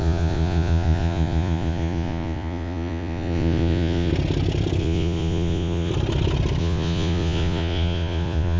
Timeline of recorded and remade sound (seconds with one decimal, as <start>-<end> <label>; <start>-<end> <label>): 0.0-4.1 remade; 4.1-4.8 recorded; 4.8-5.9 remade; 5.9-6.6 recorded; 6.6-8.6 remade